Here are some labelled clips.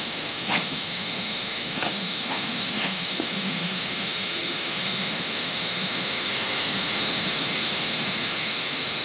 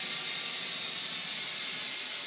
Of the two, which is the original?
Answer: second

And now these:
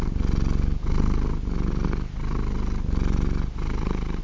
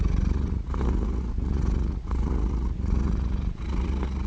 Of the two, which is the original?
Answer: first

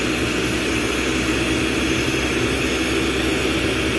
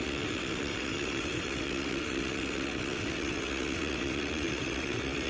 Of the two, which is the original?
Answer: first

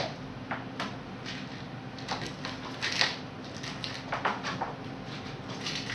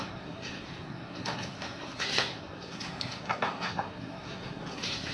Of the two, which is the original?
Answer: first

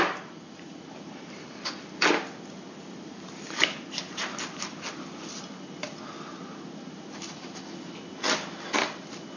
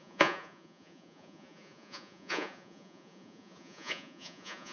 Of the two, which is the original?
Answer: first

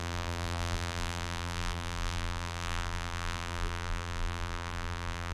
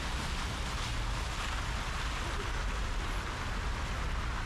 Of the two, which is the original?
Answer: second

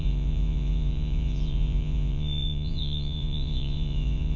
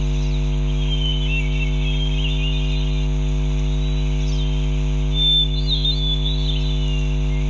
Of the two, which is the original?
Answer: second